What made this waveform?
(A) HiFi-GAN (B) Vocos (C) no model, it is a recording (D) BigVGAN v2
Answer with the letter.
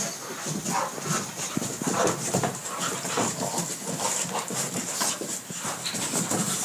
C